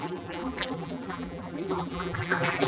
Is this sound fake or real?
fake